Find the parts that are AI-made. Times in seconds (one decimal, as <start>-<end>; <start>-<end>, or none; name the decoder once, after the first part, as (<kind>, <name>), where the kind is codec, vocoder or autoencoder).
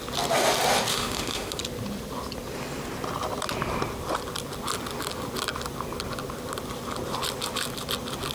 0.9-1.6 (autoencoder, DAC-VAE)